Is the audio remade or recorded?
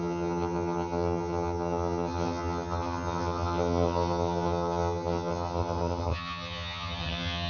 remade